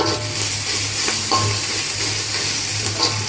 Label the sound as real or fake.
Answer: real